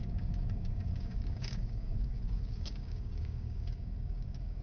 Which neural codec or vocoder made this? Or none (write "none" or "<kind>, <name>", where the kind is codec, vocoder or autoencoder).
codec, DAC